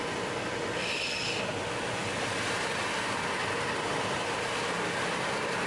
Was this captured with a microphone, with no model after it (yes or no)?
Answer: yes